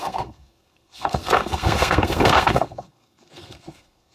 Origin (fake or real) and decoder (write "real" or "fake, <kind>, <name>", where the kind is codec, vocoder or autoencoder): fake, codec, SNAC